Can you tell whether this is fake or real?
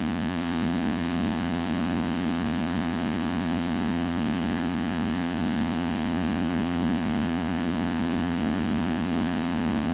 fake